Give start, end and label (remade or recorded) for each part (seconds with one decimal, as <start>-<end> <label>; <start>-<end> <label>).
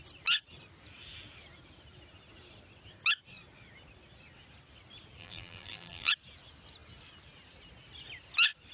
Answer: 0.0-5.2 recorded; 5.2-6.1 remade; 6.1-8.7 recorded